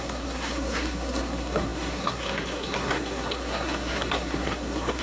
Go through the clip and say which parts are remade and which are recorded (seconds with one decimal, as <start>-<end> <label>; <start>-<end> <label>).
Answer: 0.0-5.0 remade